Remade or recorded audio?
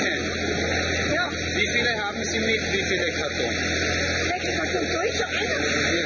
recorded